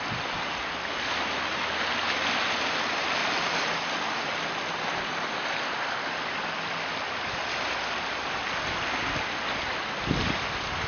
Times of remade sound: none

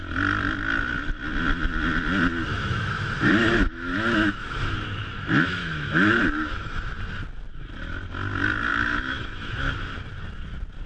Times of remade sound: 2.5-6.8 (autoencoder, DAC-VAE); 8.7-9.7

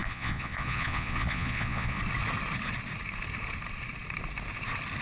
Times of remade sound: 0.0-2.0 (vocoder, Vocos)